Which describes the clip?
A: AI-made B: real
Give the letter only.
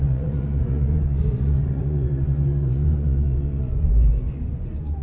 A